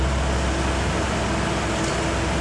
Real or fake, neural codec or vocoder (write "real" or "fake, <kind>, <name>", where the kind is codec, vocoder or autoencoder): real